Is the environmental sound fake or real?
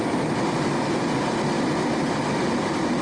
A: fake